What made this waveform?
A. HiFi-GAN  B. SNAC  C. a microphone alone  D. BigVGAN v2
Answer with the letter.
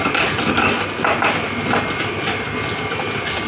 C